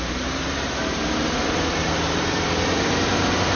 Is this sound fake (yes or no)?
yes